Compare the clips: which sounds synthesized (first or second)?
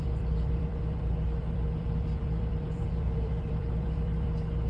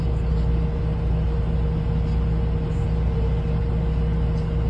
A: first